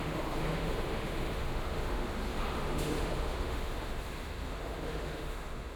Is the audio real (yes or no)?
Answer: no